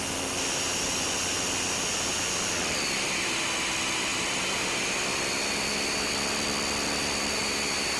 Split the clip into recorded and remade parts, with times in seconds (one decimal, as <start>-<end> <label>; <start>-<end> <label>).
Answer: 0.0-8.0 recorded